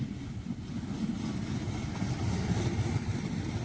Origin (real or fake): real